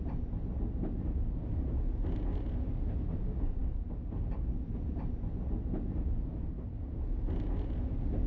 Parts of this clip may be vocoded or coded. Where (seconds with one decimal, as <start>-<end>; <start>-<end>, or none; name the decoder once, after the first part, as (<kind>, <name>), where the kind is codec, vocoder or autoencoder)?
none

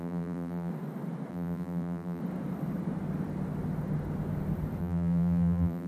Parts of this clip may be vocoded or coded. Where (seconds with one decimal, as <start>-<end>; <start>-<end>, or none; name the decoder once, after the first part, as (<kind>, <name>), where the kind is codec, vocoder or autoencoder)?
0.0-0.7 (vocoder, BigVGAN v2); 1.3-2.2; 4.8-5.9

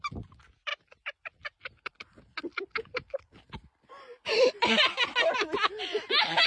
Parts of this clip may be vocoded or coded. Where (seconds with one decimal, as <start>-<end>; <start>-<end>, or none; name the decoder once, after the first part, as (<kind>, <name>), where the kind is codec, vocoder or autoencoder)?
0.7-1.9 (vocoder, BigVGAN v2); 2.5-4.9

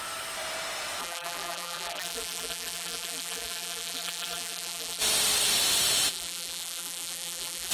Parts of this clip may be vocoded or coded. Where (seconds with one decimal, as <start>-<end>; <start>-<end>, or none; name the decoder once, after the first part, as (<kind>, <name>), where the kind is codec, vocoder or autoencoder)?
1.0-5.0 (vocoder, BigVGAN v2); 6.1-7.7

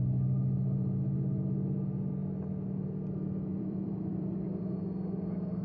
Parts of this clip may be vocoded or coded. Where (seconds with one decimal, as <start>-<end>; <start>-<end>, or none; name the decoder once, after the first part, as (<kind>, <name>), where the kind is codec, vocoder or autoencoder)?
3.5-4.6 (vocoder, BigVGAN v2)